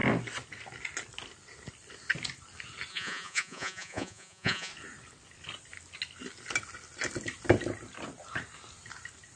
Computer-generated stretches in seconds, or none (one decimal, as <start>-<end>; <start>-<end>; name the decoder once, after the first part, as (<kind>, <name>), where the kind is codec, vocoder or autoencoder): 2.9-4.7 (vocoder, Vocos)